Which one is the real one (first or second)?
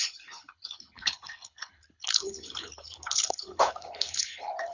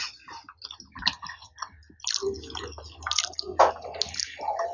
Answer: second